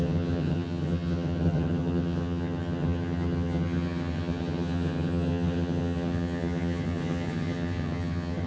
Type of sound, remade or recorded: remade